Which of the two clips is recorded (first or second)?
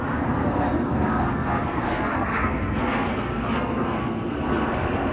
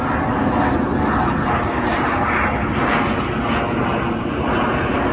second